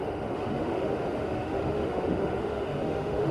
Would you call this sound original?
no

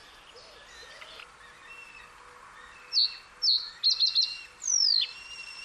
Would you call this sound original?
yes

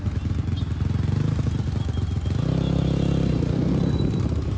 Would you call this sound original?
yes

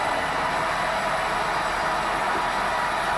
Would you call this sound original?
yes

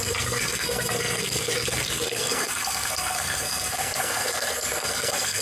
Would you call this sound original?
no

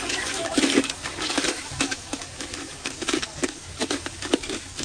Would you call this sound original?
no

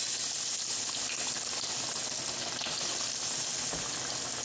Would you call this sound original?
yes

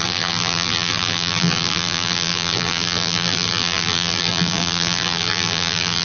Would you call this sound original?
no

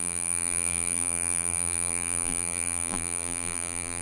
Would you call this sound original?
no